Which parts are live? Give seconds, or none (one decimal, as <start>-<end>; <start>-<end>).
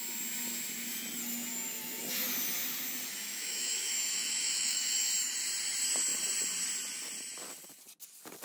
0.0-1.5; 2.0-3.2; 5.1-8.4